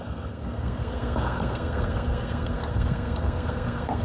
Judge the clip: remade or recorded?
remade